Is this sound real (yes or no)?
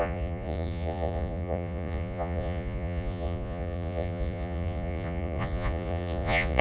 no